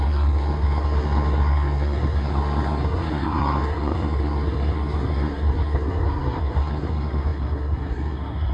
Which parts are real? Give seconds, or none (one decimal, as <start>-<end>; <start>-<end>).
none